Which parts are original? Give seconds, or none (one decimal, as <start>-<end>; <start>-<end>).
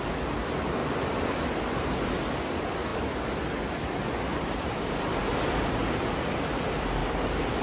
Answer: 0.8-1.7; 2.9-4.4; 5.3-6.0; 7.0-7.6